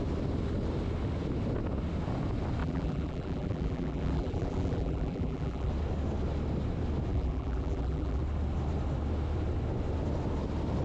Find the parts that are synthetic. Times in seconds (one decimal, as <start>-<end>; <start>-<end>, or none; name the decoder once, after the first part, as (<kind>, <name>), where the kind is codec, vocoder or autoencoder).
2.6-5.7 (vocoder, BigVGAN v2); 7.1-8.2